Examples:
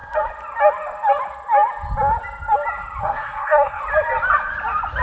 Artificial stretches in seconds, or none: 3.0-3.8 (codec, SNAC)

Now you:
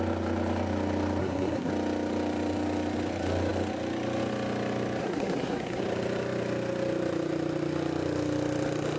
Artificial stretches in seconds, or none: 1.2-1.7 (codec, SNAC); 5.0-5.8

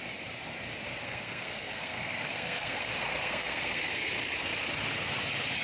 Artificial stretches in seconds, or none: 1.0-4.1 (codec, SNAC)

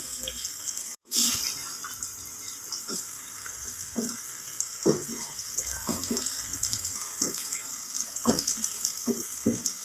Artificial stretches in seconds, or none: 0.0-1.4 (codec, SNAC); 2.8-9.8

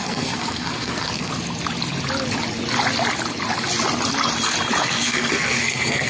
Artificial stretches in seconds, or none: 0.0-1.3 (codec, SNAC); 4.8-6.1

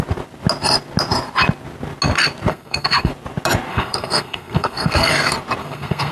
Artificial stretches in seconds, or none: 2.5-3.1 (codec, SNAC); 3.7-5.1; 5.6-6.1